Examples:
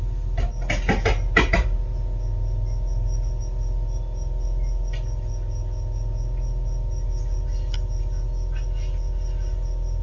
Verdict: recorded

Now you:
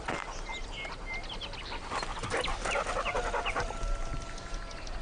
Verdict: recorded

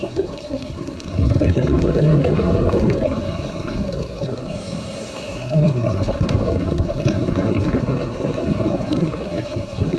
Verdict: remade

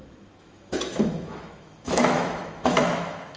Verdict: remade